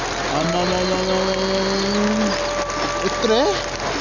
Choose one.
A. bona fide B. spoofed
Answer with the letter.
A